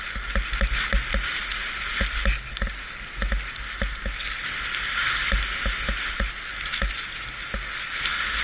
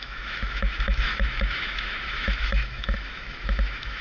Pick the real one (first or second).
first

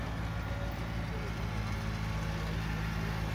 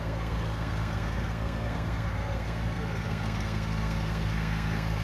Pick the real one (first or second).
first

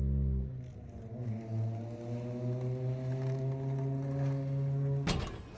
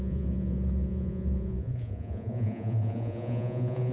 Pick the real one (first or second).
first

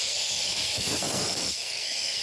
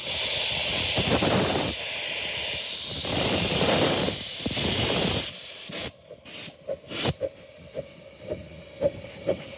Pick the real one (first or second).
second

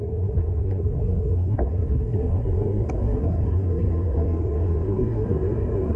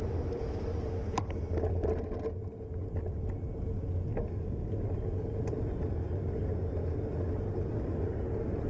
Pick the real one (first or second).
second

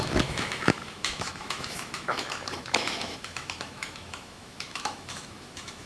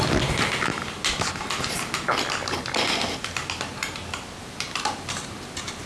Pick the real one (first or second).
second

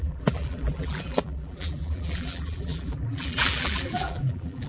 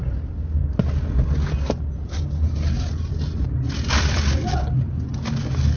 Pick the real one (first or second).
second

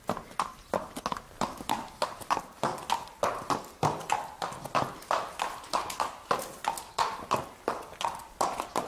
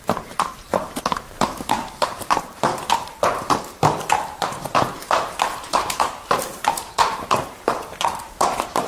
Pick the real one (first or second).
first